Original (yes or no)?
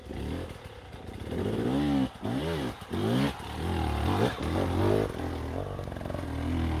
yes